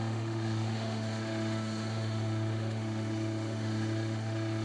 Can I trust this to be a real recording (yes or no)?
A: no